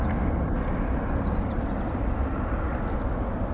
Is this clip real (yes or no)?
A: yes